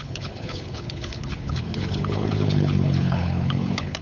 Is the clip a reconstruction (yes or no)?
yes